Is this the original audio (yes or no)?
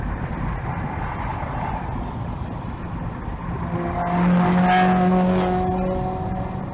yes